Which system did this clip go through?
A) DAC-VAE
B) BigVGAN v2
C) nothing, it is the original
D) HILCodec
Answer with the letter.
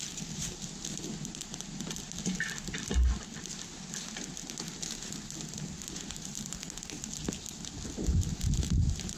C